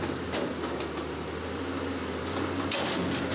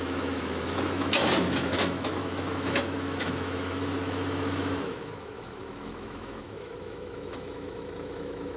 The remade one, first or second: second